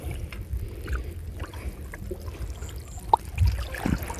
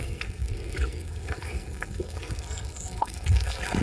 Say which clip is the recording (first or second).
first